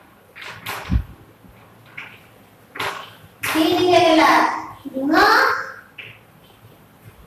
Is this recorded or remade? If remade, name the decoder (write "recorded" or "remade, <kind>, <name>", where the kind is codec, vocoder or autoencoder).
recorded